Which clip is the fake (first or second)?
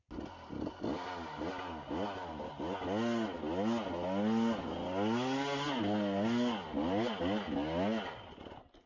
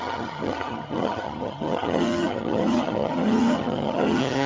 second